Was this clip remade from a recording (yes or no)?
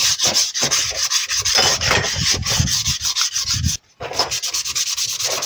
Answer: no